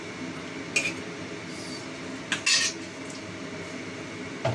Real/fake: real